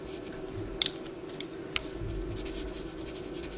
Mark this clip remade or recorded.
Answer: recorded